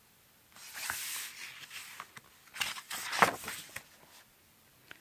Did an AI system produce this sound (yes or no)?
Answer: no